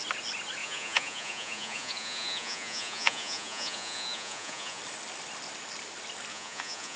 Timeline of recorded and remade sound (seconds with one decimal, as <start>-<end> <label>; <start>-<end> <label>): 0.0-0.6 recorded; 0.6-4.8 remade; 4.8-6.3 recorded; 6.3-7.0 remade